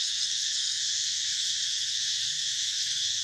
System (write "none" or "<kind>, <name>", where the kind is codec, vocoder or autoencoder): codec, SNAC